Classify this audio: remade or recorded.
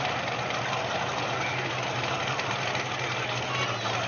recorded